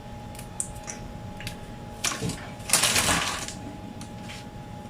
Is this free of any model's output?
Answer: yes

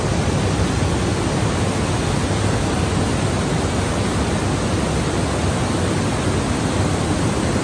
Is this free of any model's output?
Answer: yes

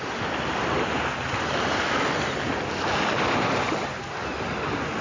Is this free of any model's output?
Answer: yes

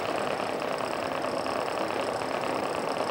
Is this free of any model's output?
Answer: yes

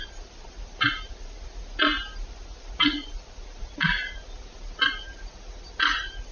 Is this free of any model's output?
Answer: yes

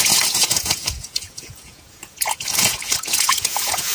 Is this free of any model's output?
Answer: no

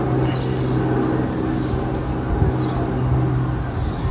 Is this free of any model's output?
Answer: yes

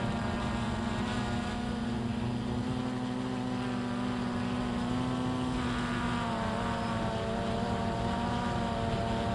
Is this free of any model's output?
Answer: yes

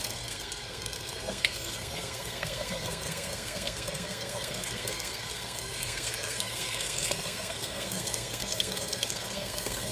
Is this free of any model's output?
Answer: no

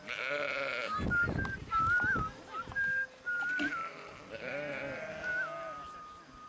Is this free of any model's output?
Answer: yes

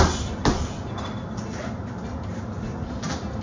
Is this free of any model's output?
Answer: yes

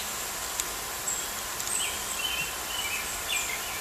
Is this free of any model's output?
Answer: yes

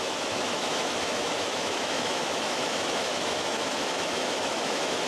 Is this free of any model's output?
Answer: no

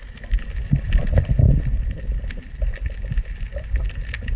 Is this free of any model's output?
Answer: yes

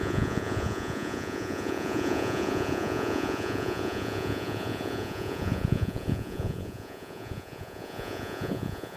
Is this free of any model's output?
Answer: no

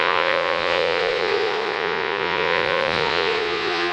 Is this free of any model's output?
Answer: no